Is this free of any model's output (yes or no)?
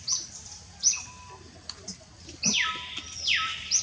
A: yes